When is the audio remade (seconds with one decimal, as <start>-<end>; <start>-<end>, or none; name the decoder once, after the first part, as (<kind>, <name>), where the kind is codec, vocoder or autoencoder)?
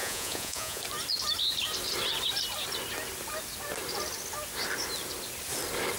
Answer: 0.0-0.8 (vocoder, Vocos)